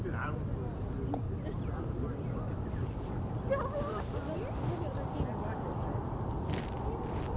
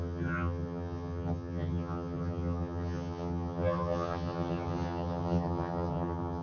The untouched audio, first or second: first